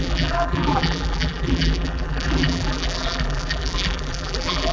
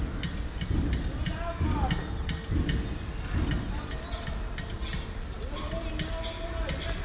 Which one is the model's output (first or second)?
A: first